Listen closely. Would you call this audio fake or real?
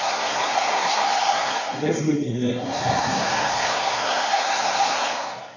fake